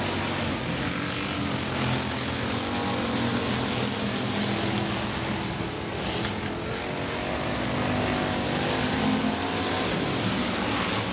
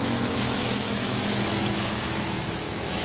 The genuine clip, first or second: first